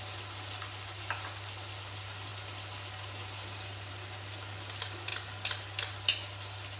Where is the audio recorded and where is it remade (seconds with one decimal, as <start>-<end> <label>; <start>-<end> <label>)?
0.0-6.8 recorded